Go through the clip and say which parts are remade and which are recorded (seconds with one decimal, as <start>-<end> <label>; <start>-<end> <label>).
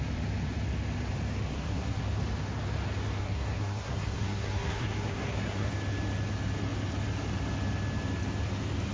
0.0-1.5 recorded; 1.5-2.0 remade; 2.0-3.2 recorded; 3.2-5.7 remade; 5.7-8.9 recorded